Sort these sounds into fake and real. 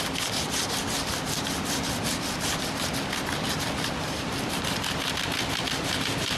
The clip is fake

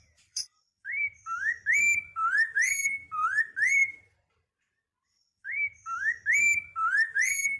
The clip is fake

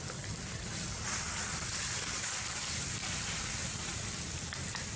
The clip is real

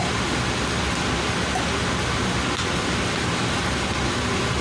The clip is real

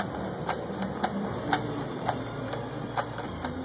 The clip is fake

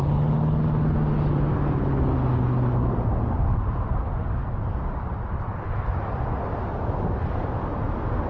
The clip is real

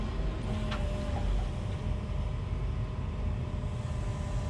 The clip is real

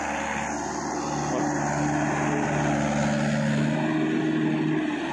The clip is real